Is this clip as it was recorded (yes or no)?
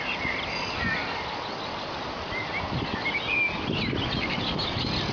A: yes